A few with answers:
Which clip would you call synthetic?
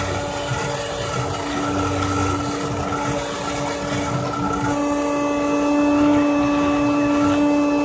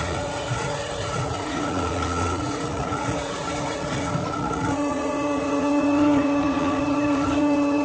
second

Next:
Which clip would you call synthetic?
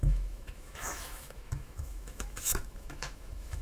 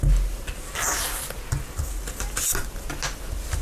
first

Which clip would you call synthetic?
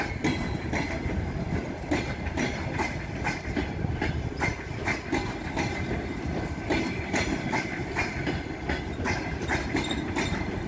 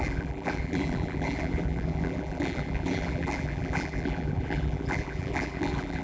second